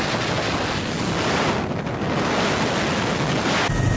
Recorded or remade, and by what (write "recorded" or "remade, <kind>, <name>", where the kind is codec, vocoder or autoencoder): recorded